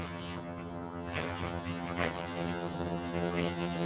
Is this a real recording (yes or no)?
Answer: no